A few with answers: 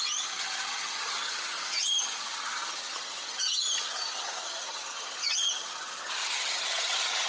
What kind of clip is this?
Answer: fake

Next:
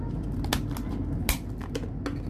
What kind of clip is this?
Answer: real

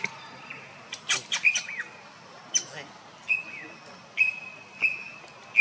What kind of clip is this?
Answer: real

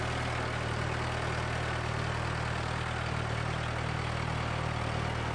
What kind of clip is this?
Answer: real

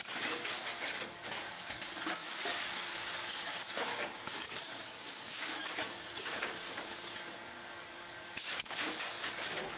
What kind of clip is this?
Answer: fake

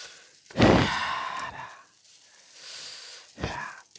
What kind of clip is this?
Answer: real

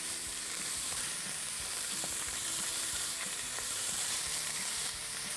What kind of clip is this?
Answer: fake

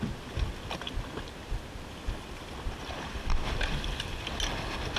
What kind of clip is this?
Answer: real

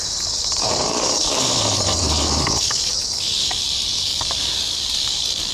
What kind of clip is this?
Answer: fake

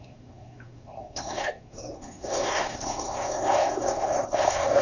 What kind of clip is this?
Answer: fake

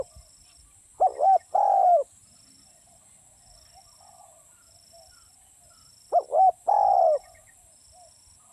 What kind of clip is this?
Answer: real